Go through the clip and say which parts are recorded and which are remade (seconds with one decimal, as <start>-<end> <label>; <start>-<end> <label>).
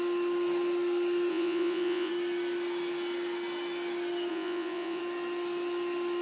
0.0-1.3 recorded; 1.3-2.1 remade; 2.1-4.3 recorded; 4.3-5.0 remade; 5.0-6.2 recorded